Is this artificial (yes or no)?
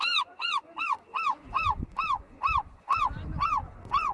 yes